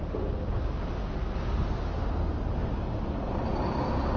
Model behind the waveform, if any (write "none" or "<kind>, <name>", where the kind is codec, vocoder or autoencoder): none